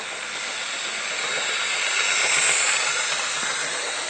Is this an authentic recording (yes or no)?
yes